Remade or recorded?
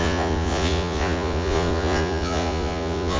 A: remade